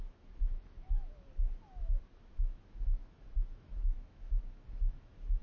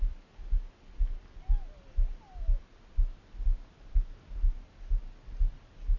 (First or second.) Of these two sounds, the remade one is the first